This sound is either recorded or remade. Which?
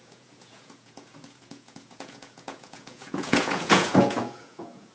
remade